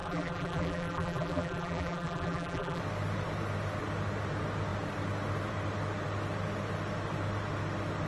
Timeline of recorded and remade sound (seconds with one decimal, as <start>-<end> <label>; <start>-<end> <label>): 0.0-2.8 remade; 2.8-8.1 recorded